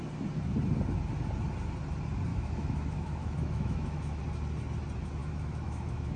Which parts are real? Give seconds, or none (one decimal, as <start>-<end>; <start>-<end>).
0.0-2.3; 4.2-5.2